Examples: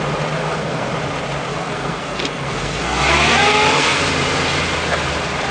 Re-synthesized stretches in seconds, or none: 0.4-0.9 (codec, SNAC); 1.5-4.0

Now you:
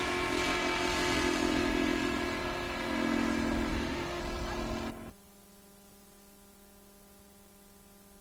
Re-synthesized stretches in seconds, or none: 3.7-4.2 (autoencoder, DAC-VAE)

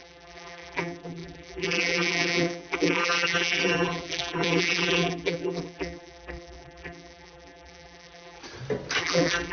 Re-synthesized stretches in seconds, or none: 0.0-8.4 (vocoder, BigVGAN v2); 9.0-9.5

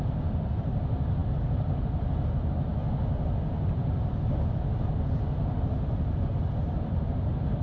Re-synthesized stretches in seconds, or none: none

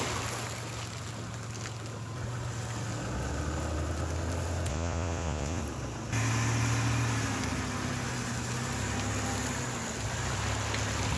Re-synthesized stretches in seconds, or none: 4.7-5.6 (vocoder, Vocos)

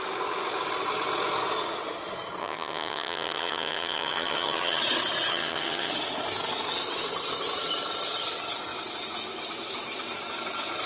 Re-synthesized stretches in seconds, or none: 2.4-4.8 (vocoder, HiFi-GAN); 5.3-5.9

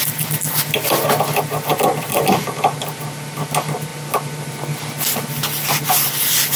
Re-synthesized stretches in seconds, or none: 1.7-2.7 (vocoder, BigVGAN v2)